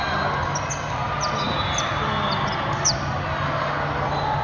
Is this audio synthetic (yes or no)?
no